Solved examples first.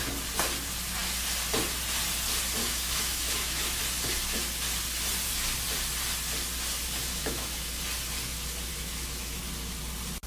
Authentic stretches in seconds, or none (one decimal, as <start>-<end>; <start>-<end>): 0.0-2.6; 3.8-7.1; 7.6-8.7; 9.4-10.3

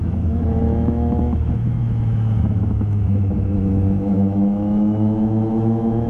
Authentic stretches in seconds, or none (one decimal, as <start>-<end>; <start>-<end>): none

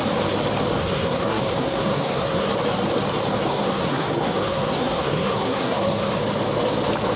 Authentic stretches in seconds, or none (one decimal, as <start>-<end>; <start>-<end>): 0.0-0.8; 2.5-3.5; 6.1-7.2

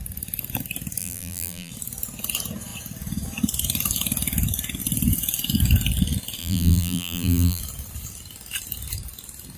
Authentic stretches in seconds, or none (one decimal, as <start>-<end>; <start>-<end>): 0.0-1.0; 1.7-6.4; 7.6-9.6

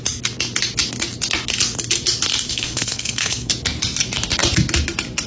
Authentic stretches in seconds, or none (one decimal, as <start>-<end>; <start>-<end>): 0.0-2.5; 3.5-5.3

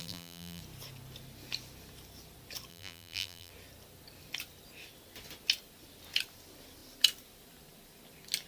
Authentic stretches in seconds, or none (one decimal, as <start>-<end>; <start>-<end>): 0.6-2.7; 3.5-8.5